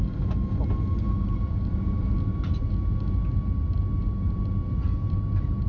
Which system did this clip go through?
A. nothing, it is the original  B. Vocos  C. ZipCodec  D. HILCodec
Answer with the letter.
A